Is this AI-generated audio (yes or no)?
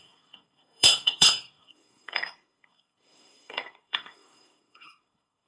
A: yes